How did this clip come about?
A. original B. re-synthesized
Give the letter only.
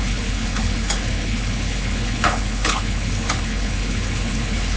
B